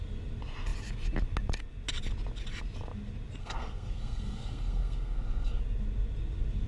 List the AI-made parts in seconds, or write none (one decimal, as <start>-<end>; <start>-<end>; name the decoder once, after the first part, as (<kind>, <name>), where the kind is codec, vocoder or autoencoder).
3.4-5.6 (codec, SNAC)